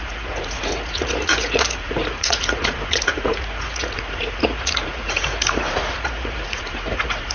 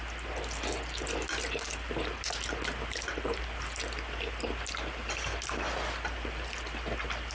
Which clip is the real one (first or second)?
second